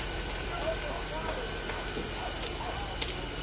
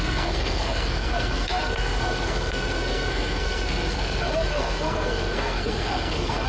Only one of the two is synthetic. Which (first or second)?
second